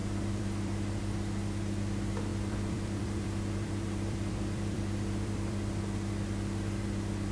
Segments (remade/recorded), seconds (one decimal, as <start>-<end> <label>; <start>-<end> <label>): 0.0-1.0 remade; 1.0-2.3 recorded; 2.3-5.6 remade; 5.6-7.3 recorded